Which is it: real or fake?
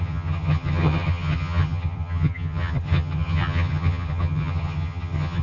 fake